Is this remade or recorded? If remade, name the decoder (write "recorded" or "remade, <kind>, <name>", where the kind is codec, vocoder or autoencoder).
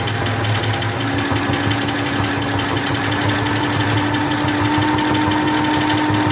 recorded